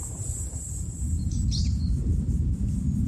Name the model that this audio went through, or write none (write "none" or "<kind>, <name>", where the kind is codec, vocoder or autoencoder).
vocoder, BigVGAN v2